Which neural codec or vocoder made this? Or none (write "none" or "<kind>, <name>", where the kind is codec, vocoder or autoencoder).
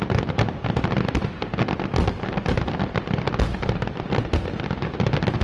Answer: none